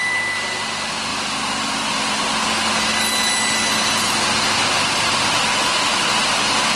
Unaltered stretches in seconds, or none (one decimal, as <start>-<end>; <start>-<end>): 0.0-1.1; 2.2-6.8